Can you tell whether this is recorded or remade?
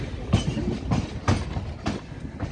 recorded